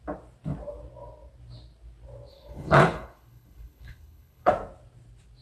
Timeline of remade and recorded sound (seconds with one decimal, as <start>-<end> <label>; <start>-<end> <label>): 0.0-2.3 recorded; 2.3-4.5 remade; 4.5-5.4 recorded